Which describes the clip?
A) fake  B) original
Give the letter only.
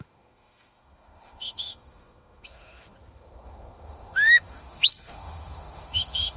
A